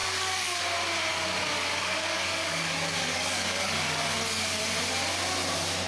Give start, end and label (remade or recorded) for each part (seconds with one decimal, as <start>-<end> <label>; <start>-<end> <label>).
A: 0.0-0.6 remade; 0.6-1.1 recorded; 1.1-4.6 remade; 4.6-5.9 recorded